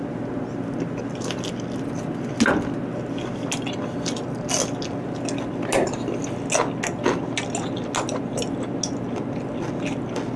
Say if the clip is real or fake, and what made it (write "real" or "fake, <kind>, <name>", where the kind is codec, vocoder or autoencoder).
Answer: real